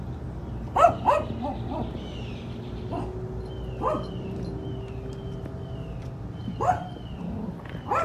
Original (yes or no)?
yes